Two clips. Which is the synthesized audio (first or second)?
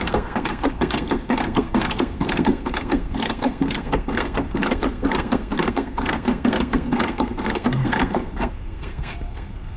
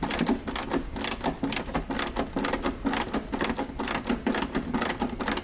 first